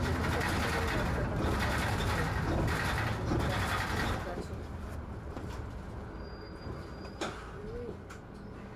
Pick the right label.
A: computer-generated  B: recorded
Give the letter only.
B